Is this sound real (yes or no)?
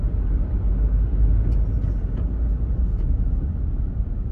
yes